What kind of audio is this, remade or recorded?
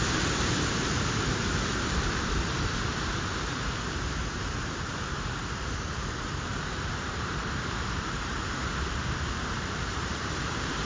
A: remade